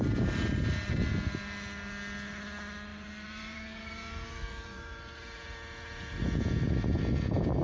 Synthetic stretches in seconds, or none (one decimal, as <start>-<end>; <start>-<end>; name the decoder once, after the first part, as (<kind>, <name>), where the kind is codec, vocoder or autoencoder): 2.9-5.0 (vocoder, BigVGAN v2)